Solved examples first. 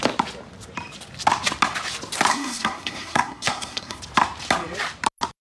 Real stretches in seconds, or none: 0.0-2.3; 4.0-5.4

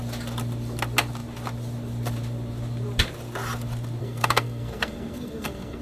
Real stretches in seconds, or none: 0.0-4.0